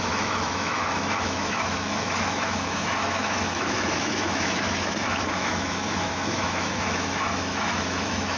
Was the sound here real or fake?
fake